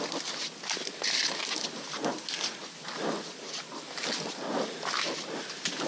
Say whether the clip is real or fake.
real